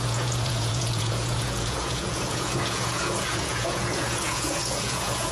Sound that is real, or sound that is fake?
fake